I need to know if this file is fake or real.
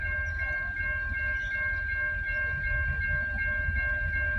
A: real